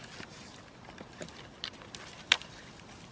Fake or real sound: real